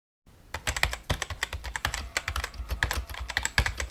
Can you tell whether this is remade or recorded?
recorded